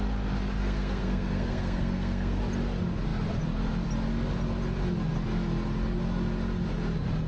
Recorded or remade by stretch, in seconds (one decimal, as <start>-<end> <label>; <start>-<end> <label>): 0.0-0.6 recorded; 0.6-2.4 remade; 2.4-7.3 recorded